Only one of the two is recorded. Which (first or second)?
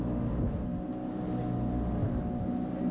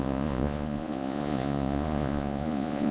first